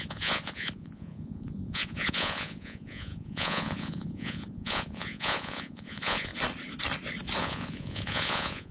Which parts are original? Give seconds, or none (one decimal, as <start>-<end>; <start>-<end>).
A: 6.3-7.4

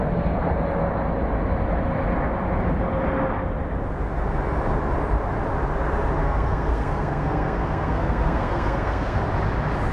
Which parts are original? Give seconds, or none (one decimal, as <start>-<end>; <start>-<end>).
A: 0.0-6.2; 9.2-9.9

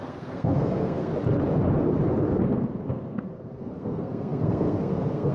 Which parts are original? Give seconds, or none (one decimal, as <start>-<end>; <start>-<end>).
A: 1.1-2.8

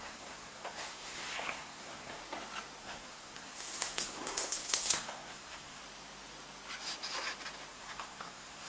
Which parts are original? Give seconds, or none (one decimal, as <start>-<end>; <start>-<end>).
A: 2.2-2.8; 5.8-7.7

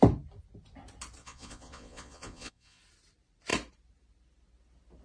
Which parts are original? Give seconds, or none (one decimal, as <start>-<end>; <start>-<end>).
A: 0.0-1.2; 2.8-5.0

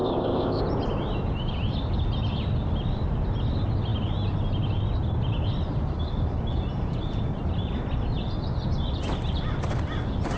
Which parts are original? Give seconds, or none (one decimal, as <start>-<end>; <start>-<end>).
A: 0.6-10.4